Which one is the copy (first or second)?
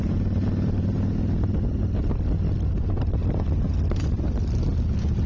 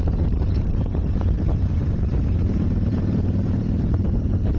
second